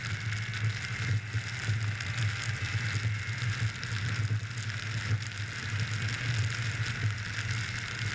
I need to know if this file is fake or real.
real